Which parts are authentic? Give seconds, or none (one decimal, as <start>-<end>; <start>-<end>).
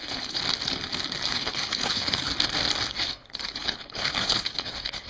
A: 0.4-1.3; 2.3-2.9